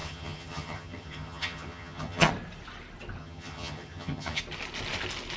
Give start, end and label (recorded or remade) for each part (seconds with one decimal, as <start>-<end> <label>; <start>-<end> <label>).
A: 0.0-2.3 remade; 2.3-3.2 recorded; 3.2-4.4 remade; 4.4-5.4 recorded